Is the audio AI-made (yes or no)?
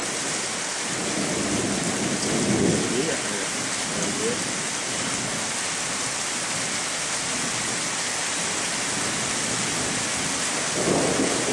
no